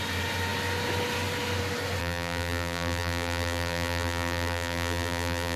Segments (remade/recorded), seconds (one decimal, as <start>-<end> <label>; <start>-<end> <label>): 0.0-2.0 recorded; 2.0-5.6 remade